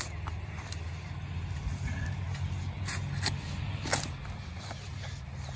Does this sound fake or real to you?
real